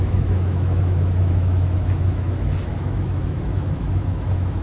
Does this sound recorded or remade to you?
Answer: remade